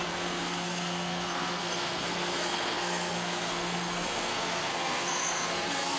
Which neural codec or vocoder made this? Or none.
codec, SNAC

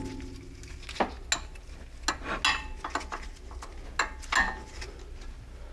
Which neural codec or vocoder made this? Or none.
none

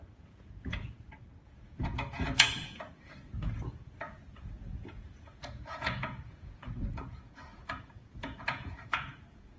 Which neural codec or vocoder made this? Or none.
vocoder, Vocos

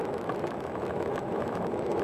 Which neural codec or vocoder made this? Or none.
autoencoder, DAC-VAE